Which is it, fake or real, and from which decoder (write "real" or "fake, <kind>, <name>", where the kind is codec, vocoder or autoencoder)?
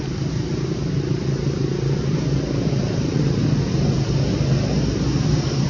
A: real